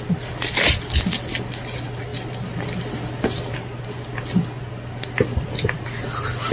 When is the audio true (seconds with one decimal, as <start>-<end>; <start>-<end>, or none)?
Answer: 0.0-6.5